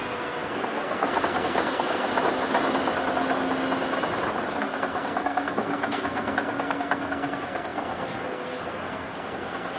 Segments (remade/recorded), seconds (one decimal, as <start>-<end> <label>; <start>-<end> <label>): 0.0-2.1 remade; 2.1-4.6 recorded; 4.6-9.8 remade